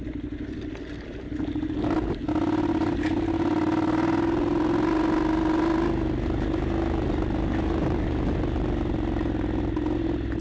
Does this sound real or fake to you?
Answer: real